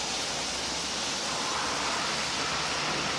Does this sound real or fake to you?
real